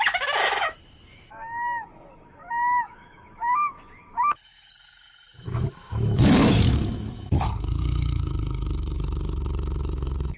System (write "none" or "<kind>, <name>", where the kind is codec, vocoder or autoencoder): autoencoder, DAC-VAE